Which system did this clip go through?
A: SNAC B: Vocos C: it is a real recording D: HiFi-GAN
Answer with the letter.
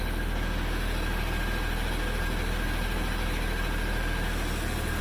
C